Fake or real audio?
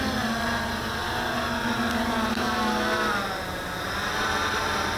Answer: real